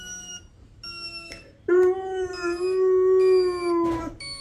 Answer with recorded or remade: recorded